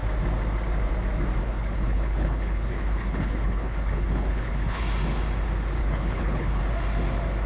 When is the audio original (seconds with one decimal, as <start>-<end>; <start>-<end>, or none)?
0.0-1.4; 4.8-5.8; 6.6-7.5